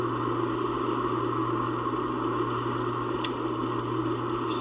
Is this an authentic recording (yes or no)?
yes